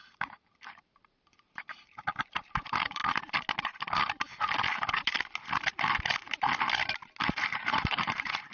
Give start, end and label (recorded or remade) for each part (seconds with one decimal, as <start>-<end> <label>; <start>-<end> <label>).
0.0-3.0 remade; 3.0-7.2 recorded; 7.2-8.5 remade